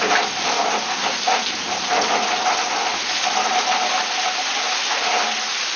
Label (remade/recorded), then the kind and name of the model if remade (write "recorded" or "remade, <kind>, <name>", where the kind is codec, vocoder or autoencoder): recorded